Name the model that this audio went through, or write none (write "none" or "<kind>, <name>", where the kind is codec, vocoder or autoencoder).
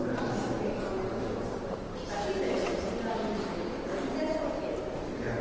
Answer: none